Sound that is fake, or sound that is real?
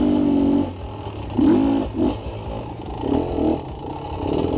real